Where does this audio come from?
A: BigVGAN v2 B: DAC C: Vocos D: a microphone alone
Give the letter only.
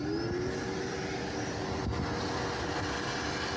D